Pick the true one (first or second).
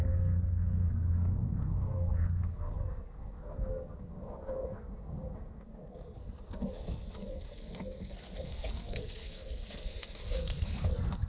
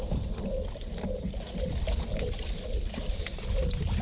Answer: second